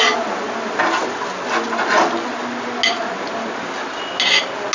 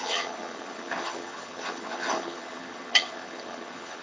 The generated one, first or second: second